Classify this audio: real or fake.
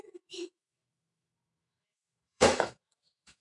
fake